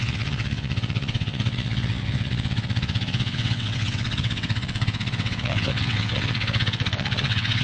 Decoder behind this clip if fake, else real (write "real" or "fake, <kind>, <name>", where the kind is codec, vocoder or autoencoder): fake, vocoder, WaveNeXt